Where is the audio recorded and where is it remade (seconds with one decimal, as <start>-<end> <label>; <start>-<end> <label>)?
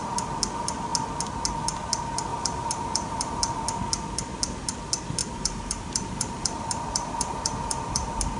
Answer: 0.0-2.3 recorded; 2.3-3.4 remade; 3.4-5.2 recorded; 5.2-8.4 remade